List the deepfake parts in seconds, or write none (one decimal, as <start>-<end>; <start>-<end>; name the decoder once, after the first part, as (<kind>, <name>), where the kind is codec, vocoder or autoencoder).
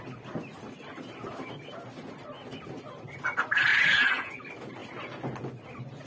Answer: 3.7-4.3 (vocoder, Vocos)